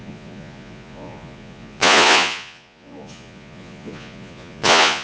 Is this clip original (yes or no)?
no